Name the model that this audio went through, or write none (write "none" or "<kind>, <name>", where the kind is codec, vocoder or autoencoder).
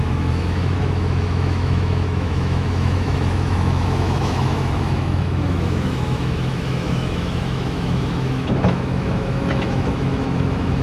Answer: autoencoder, DAC-VAE